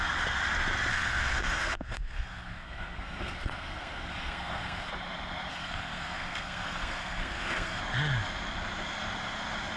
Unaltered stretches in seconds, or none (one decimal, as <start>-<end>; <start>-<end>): 0.0-0.9; 4.9-5.5; 7.8-9.8